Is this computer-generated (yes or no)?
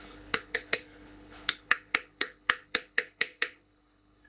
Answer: yes